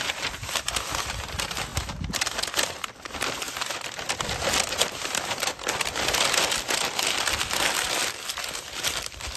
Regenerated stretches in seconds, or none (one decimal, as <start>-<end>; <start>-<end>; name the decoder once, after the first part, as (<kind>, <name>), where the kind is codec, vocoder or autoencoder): 3.5-7.1 (vocoder, BigVGAN v2)